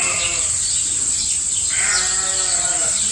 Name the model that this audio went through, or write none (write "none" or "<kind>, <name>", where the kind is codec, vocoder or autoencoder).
none